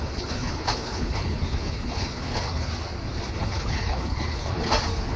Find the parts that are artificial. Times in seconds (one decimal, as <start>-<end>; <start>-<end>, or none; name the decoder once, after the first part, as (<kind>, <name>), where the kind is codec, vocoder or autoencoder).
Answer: 0.0-2.7 (codec, HILCodec); 3.3-4.6